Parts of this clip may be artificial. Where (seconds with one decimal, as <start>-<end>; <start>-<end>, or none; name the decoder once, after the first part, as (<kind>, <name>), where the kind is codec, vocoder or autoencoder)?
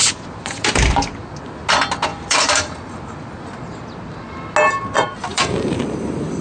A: 0.0-1.4 (vocoder, BigVGAN v2); 2.1-3.8; 5.3-5.8